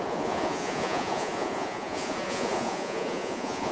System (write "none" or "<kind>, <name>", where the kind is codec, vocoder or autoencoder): vocoder, Vocos